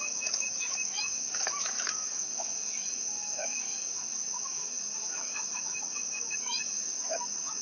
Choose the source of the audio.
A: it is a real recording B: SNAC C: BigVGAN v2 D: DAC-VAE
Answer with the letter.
D